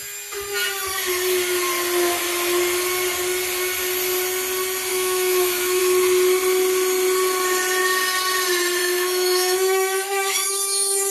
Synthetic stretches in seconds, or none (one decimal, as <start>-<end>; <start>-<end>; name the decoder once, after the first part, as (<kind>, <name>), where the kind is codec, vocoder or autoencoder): 4.9-5.8 (autoencoder, DAC-VAE); 8.8-11.1